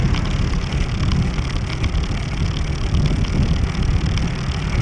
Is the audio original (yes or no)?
yes